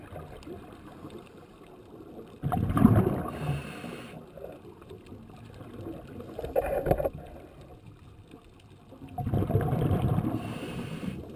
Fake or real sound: real